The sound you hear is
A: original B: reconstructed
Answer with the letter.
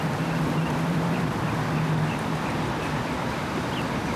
B